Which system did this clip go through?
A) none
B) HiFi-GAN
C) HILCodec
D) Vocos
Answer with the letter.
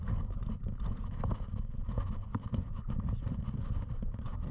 A